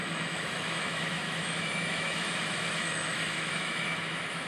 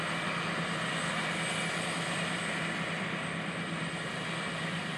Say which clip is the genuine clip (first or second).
second